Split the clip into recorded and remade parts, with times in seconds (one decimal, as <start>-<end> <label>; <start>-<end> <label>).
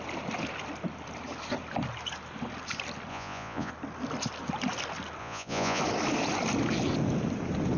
0.0-3.1 recorded; 3.1-3.7 remade; 3.7-5.2 recorded; 5.2-5.8 remade; 5.8-7.8 recorded